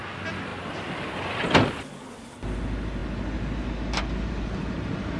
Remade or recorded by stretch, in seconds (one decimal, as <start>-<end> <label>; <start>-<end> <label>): 0.0-5.2 recorded